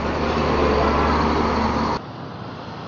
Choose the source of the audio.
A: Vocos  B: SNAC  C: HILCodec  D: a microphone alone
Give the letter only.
D